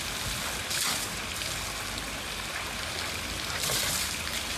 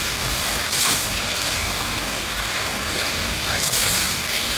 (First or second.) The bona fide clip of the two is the first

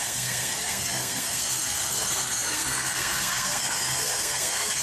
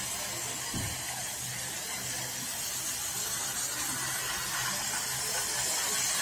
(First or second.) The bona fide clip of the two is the second